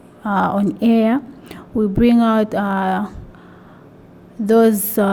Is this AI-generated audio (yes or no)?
no